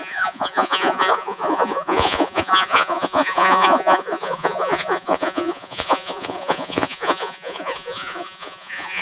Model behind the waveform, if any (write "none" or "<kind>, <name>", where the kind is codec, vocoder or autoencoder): vocoder, Vocos